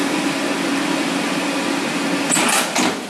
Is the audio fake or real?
real